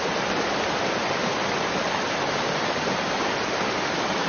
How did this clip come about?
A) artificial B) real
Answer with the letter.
B